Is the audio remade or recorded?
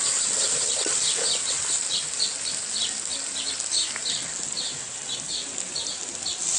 recorded